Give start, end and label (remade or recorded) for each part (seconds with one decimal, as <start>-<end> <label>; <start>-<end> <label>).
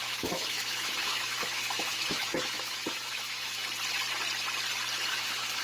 0.0-3.6 remade; 3.6-5.1 recorded; 5.1-5.6 remade